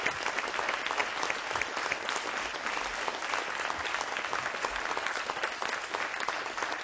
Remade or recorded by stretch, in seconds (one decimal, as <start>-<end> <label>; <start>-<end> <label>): 0.0-6.8 recorded